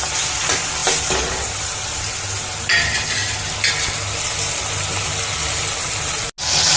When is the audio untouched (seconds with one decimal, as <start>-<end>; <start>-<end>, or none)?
0.0-6.8